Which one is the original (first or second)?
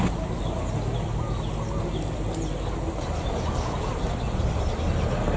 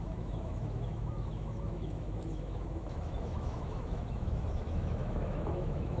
first